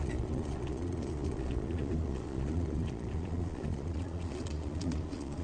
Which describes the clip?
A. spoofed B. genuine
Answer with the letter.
A